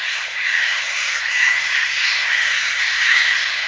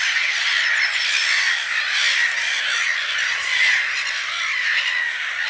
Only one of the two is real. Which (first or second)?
second